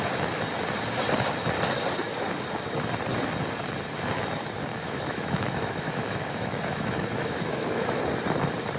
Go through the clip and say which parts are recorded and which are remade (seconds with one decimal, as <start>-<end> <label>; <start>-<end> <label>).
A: 0.0-4.7 recorded; 4.7-8.0 remade; 8.0-8.8 recorded